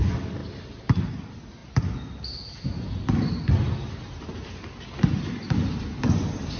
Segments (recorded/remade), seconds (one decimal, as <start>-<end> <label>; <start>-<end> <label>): 0.0-6.6 recorded